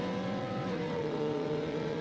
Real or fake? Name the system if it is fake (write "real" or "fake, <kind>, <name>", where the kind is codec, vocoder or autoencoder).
fake, vocoder, WaveNeXt